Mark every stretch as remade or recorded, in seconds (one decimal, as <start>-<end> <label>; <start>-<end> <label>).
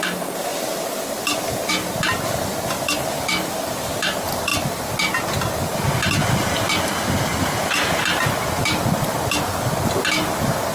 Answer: 0.0-10.7 recorded